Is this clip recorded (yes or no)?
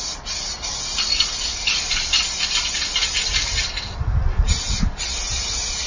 yes